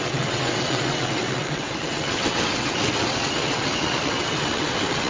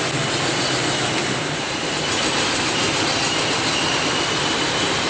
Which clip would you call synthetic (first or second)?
first